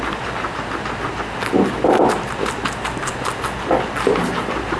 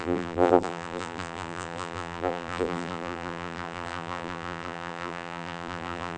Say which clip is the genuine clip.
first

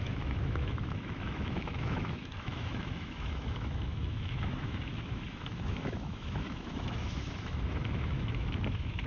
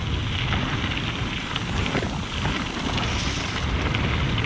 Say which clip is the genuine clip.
second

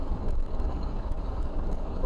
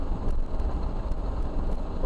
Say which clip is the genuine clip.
second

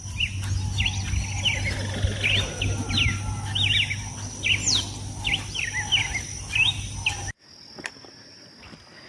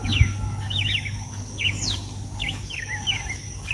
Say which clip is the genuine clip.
first